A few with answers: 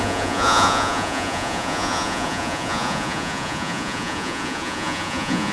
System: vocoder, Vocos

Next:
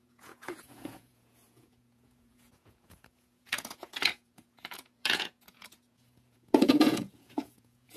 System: vocoder, Vocos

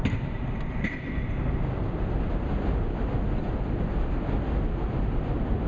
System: none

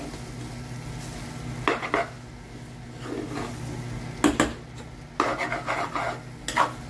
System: none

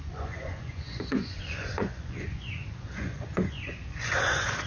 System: vocoder, Vocos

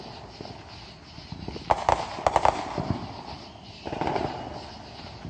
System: none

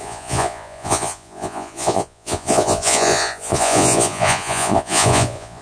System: vocoder, Vocos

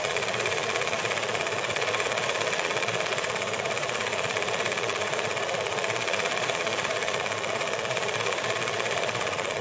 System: vocoder, Vocos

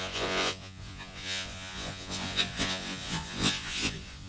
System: vocoder, Vocos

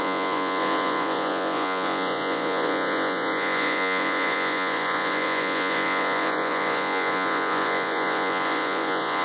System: vocoder, Vocos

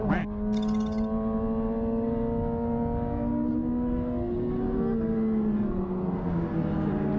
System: none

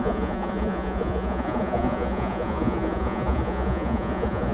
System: vocoder, Vocos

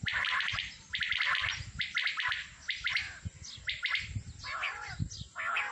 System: none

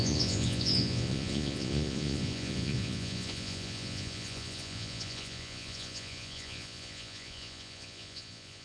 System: vocoder, Vocos